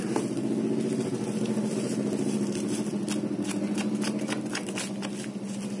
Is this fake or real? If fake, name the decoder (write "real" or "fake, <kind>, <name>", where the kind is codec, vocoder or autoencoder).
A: real